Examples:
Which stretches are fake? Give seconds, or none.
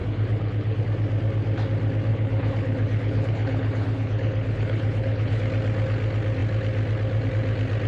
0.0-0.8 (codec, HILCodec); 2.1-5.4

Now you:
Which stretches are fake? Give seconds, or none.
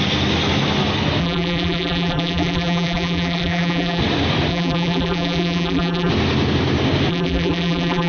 1.2-4.0 (vocoder, BigVGAN v2); 4.5-6.1; 7.1-8.1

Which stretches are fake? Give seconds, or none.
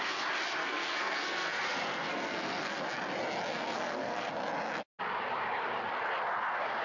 0.6-2.8 (codec, SNAC); 3.5-4.3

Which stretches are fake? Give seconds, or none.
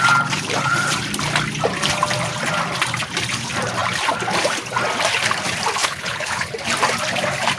5.8-6.5 (codec, HILCodec)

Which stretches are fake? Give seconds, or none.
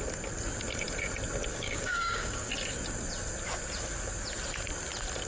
1.5-2.5 (codec, DAC)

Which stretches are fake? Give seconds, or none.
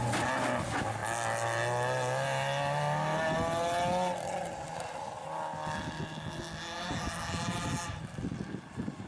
none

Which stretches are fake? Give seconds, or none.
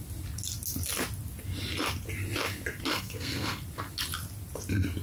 2.9-3.6 (codec, SNAC)